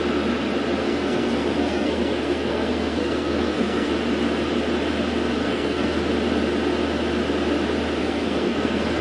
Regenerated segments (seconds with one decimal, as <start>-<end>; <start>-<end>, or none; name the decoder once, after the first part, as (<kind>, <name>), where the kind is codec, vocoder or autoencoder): 0.8-3.9 (codec, SNAC); 5.4-6.0; 8.0-9.0